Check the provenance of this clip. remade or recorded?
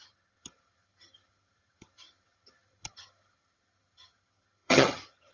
remade